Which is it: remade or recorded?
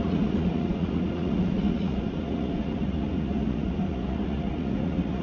remade